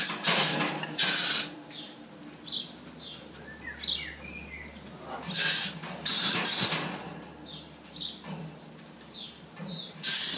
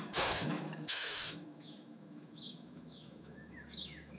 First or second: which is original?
first